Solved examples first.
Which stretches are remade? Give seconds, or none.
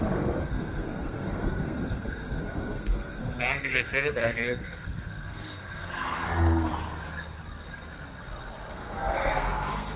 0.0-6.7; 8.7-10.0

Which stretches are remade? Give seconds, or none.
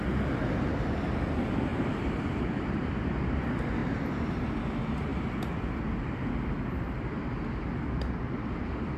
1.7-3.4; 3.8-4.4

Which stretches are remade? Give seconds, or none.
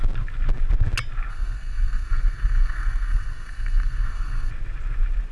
1.3-4.5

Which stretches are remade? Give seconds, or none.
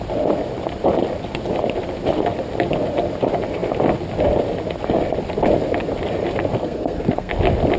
6.6-7.3